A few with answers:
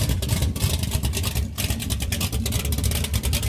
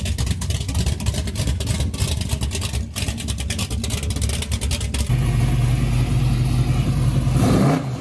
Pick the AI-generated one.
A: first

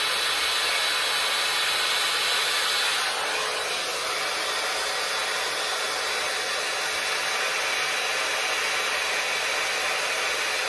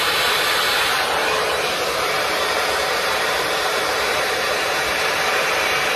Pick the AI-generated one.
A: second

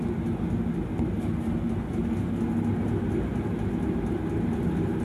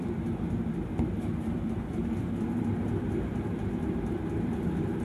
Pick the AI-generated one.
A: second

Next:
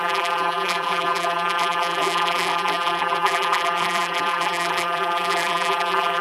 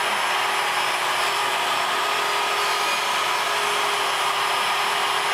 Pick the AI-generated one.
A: first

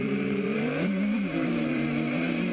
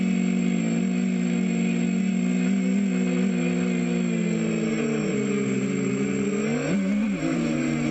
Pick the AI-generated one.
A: first